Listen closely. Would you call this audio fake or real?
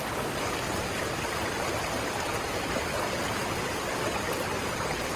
real